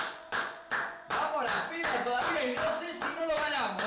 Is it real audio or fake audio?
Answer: fake